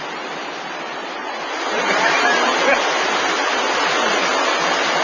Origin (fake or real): fake